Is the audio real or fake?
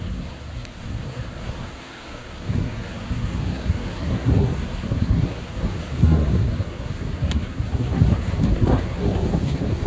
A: fake